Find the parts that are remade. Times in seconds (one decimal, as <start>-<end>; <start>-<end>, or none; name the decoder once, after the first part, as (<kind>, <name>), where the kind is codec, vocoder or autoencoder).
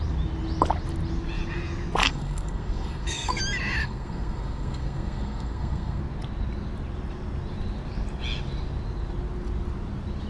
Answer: 2.0-3.4 (codec, SNAC); 3.8-6.0